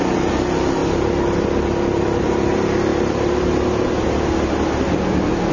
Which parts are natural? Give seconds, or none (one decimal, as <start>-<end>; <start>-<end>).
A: 0.0-2.9; 3.5-5.5